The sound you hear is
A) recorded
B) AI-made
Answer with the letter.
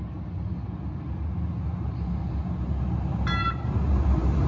A